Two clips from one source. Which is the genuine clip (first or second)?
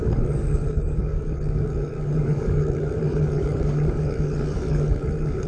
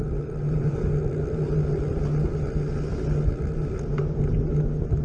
second